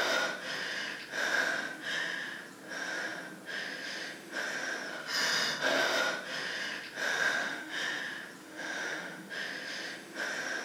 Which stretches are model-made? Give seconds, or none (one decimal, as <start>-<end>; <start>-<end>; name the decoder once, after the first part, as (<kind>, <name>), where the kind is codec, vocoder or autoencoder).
7.1-8.0 (autoencoder, DAC-VAE); 8.4-9.3